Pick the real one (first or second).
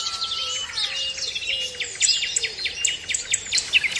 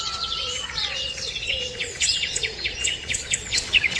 first